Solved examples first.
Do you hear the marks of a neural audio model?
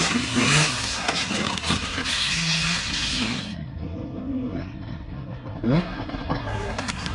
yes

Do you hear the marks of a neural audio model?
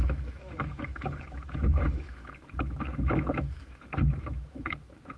yes